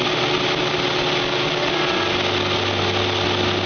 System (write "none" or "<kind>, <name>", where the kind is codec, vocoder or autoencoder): none